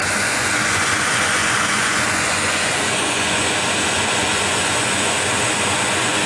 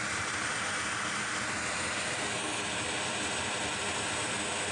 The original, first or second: second